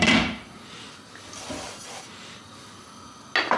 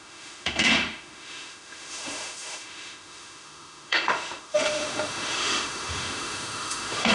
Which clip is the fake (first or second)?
second